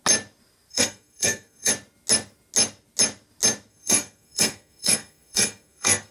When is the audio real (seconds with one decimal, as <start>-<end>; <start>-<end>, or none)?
0.0-0.7; 1.7-3.7